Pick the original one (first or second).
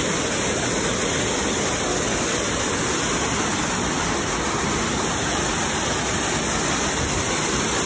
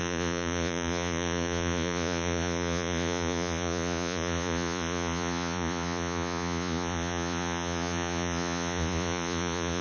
first